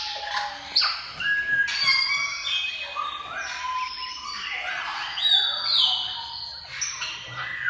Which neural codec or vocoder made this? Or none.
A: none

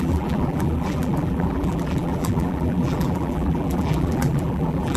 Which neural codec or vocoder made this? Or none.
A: vocoder, BigVGAN v2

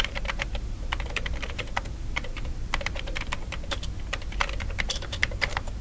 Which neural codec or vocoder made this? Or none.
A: vocoder, BigVGAN v2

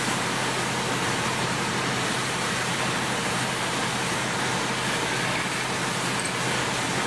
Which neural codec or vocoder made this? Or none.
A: none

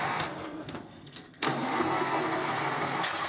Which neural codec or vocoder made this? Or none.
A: codec, SNAC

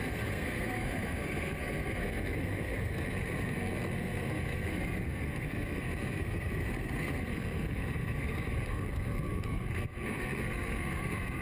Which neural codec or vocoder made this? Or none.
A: codec, SNAC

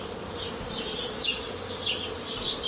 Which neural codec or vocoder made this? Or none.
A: vocoder, BigVGAN v2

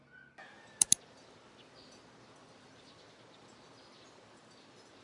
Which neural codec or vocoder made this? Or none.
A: none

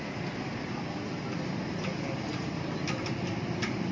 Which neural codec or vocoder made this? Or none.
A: none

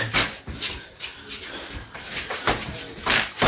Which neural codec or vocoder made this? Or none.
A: none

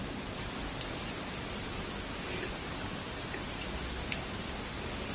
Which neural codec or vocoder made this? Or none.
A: none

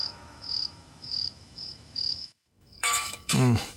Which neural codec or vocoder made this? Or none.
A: autoencoder, DAC-VAE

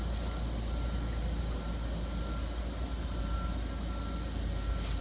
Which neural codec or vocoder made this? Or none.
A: none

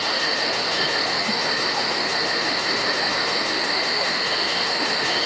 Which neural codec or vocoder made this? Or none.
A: autoencoder, DAC-VAE